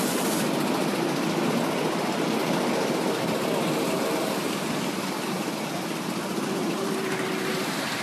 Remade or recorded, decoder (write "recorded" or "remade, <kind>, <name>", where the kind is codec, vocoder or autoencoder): recorded